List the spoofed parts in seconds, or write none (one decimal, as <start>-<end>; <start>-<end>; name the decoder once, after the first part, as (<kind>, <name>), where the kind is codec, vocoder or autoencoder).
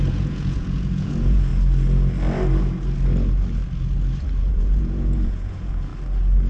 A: 0.0-1.5 (vocoder, Vocos); 4.5-5.9